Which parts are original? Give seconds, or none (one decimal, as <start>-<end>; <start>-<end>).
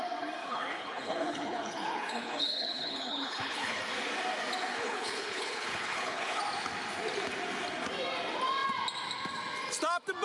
0.0-0.4; 3.8-4.7; 6.4-10.2